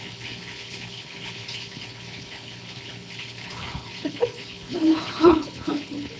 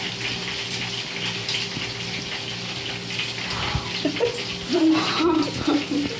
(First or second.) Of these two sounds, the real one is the second